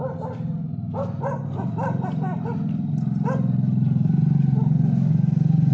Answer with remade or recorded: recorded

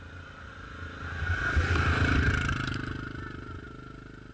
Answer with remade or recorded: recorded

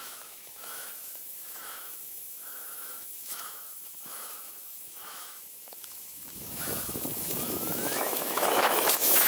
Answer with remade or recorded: remade